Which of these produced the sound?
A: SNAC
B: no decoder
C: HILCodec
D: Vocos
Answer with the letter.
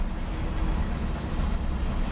B